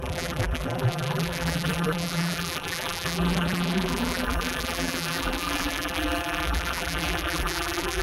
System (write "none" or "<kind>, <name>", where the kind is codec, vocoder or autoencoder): vocoder, BigVGAN v2